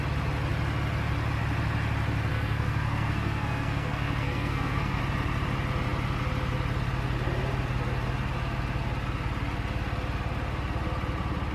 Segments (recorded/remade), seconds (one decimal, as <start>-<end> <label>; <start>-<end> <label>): 0.0-2.3 recorded; 2.3-5.0 remade; 5.0-11.5 recorded